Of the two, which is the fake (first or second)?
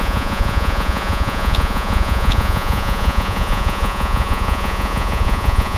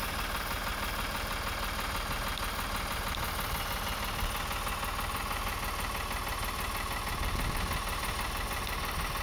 first